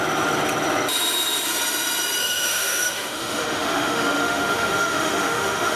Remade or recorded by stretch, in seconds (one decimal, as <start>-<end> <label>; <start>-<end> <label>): 0.0-2.2 recorded; 2.2-5.8 remade